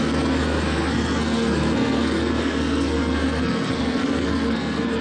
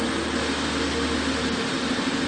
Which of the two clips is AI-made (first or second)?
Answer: first